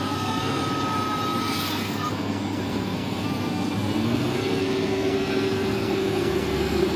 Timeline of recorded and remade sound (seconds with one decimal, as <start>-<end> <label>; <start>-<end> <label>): 0.0-0.6 remade; 0.6-1.4 recorded; 1.4-7.0 remade